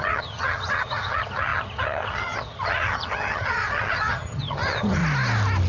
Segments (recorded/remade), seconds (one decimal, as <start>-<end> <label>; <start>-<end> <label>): 0.0-5.0 remade; 5.0-5.7 recorded